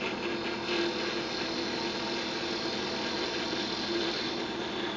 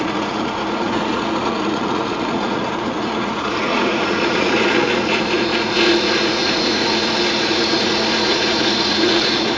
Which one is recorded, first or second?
first